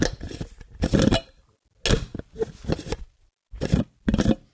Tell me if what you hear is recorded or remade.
recorded